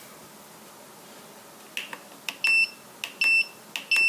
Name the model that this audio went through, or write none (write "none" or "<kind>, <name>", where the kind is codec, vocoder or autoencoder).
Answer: none